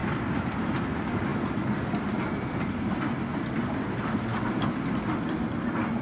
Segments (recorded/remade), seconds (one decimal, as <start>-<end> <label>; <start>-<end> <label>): 0.0-0.7 remade; 0.7-6.0 recorded